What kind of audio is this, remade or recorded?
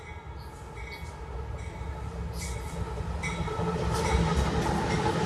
recorded